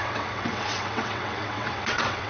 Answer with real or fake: fake